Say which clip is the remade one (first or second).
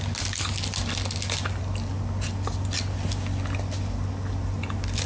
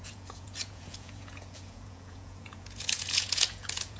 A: second